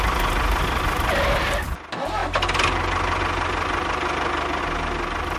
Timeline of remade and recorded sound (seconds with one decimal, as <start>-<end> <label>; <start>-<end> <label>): 0.0-5.4 recorded